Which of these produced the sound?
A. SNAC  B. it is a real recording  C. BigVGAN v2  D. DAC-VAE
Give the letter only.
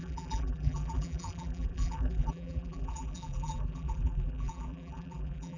C